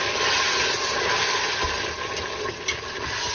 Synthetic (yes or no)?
no